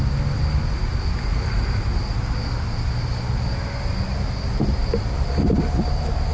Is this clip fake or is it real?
real